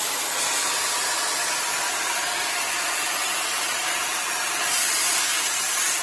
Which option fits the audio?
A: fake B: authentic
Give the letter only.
A